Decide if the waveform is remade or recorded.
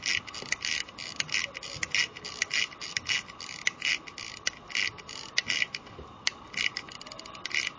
recorded